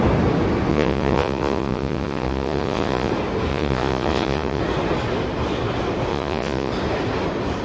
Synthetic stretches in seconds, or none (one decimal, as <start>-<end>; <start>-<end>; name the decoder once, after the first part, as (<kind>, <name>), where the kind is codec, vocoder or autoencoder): 0.7-3.1 (vocoder, Vocos); 3.5-4.6; 6.1-6.7